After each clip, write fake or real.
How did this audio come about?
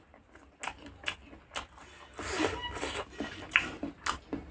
real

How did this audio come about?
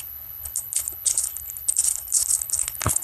fake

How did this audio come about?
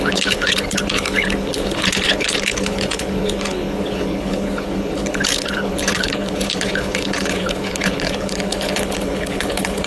fake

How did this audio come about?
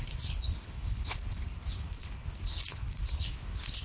fake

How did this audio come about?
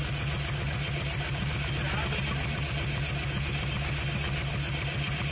real